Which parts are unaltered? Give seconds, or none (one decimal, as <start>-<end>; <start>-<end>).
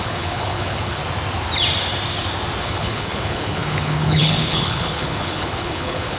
1.0-2.6